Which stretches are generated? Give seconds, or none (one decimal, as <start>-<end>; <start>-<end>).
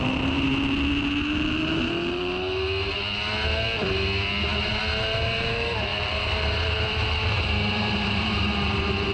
0.0-0.5; 5.0-9.1